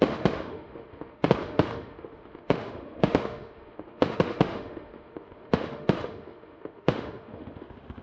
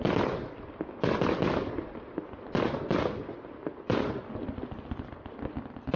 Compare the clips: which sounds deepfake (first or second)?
first